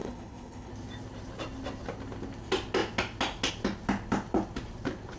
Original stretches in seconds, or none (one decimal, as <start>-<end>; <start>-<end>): 0.7-5.2